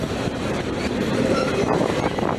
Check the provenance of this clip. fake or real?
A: fake